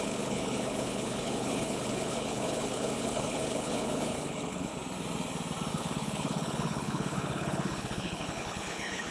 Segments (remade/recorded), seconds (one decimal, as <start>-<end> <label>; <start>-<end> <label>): 0.0-4.7 remade; 4.7-5.7 recorded; 5.7-9.1 remade